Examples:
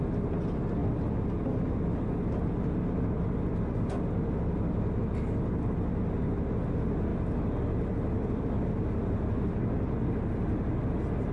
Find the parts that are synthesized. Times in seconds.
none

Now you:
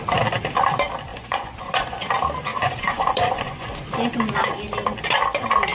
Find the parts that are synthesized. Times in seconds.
1.1-2.1 (vocoder, Vocos); 2.5-3.8

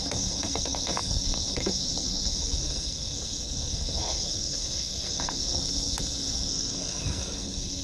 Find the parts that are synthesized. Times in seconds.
0.0-7.8 (codec, SNAC)

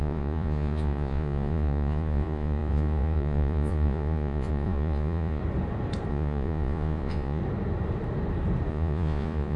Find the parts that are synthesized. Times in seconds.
0.0-5.4 (vocoder, Vocos); 6.1-7.4; 8.7-9.6

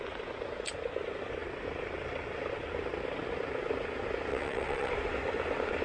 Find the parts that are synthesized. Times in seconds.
4.3-4.9 (vocoder, WaveNeXt)

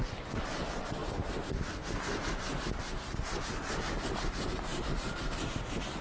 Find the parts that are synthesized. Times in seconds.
none

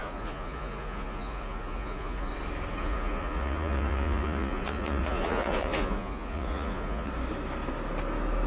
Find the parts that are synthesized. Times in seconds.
0.0-2.3 (vocoder, Vocos); 2.7-7.1